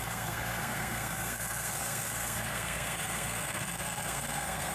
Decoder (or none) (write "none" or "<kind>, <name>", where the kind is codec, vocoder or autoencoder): codec, SNAC